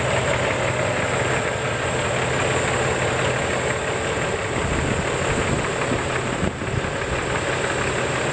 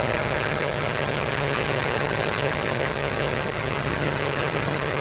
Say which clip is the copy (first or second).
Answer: second